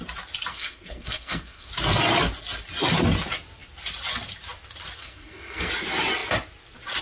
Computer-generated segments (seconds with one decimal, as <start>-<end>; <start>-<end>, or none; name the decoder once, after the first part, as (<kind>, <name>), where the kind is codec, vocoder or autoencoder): 0.5-1.7 (codec, SNAC); 5.0-5.7